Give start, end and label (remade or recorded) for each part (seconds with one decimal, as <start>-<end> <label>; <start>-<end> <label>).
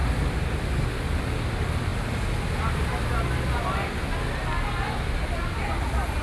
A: 0.0-6.2 recorded